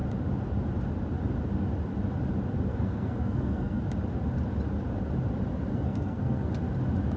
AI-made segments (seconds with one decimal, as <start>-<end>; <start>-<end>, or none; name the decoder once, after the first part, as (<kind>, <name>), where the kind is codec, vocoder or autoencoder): 2.7-3.8 (codec, SNAC); 5.7-6.5